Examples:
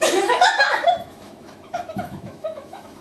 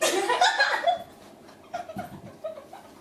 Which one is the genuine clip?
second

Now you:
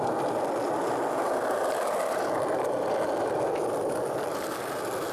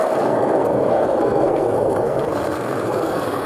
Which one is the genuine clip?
first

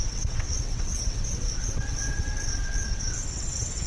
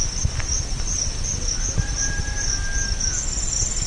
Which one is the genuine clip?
second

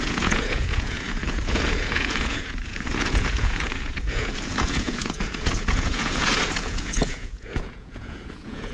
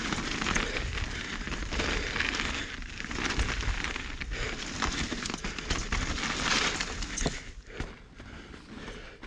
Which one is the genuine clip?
second